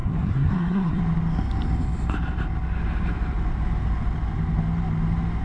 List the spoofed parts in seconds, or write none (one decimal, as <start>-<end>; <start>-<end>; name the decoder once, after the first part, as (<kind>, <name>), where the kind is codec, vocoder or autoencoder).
0.0-1.0 (codec, SNAC)